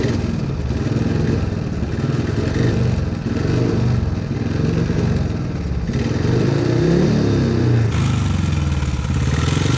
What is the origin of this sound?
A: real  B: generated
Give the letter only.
A